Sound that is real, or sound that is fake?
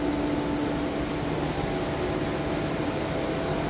real